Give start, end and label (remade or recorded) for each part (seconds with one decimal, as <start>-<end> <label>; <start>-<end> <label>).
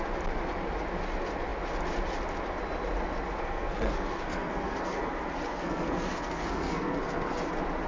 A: 0.0-3.4 recorded; 3.4-5.1 remade; 5.1-5.5 recorded; 5.5-7.4 remade; 7.4-7.9 recorded